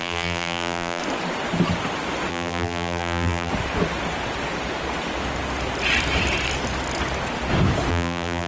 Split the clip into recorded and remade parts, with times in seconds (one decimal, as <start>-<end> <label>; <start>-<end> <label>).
0.0-1.0 remade; 1.0-2.3 recorded; 2.3-3.5 remade; 3.5-7.9 recorded; 7.9-8.5 remade